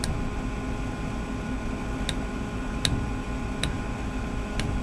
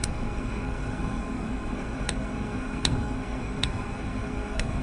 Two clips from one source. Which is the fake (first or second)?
second